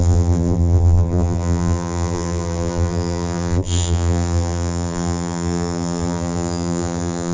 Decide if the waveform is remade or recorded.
remade